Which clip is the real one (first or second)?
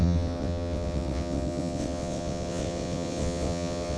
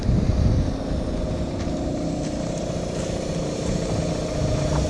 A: second